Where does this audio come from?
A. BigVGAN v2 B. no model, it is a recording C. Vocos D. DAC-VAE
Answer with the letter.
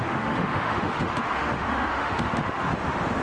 D